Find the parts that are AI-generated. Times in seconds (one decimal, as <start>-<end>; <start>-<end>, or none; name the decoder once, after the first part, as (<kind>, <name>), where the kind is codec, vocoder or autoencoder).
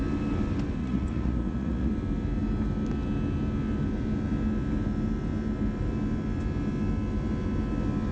0.8-1.9 (vocoder, Vocos)